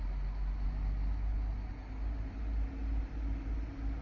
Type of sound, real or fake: real